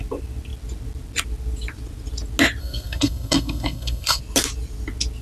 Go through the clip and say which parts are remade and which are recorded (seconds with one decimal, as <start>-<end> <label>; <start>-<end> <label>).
0.0-2.6 recorded; 2.6-4.2 remade; 4.2-5.2 recorded